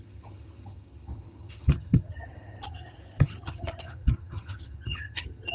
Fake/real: fake